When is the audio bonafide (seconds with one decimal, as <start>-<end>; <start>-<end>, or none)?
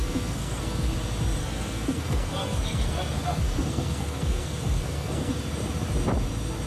0.9-1.4; 5.4-6.7